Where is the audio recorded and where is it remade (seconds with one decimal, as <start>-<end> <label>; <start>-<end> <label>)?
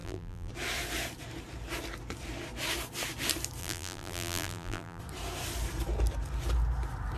0.0-0.5 remade; 0.5-3.6 recorded; 3.6-5.0 remade; 5.0-7.2 recorded